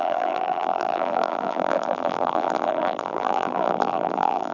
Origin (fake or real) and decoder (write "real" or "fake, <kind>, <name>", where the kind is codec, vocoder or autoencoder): fake, vocoder, BigVGAN v2